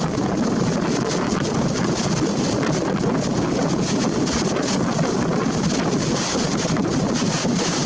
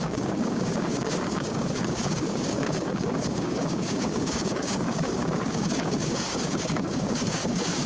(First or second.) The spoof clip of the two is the second